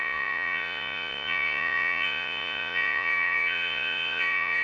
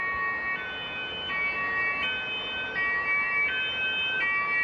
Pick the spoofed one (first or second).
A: first